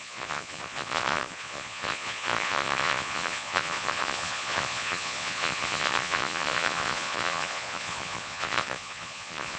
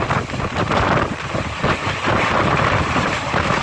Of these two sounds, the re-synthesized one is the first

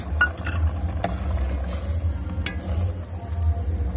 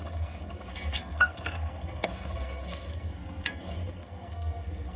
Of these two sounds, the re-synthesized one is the second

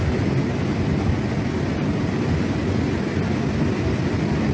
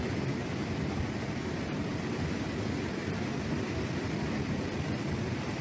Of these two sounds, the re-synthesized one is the second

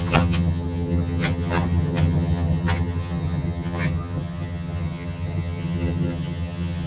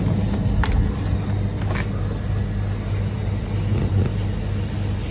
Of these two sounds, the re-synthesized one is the first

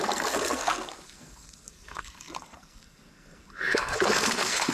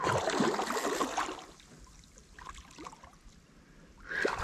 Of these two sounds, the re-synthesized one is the first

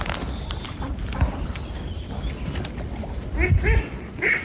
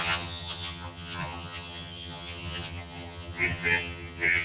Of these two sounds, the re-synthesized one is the second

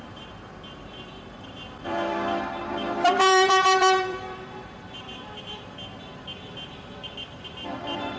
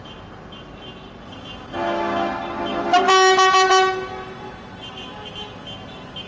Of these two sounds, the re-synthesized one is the first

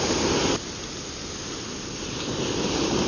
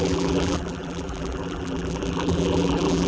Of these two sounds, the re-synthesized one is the second